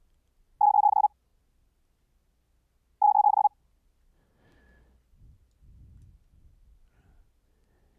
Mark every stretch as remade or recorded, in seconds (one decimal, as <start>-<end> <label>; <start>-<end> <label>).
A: 0.0-8.0 recorded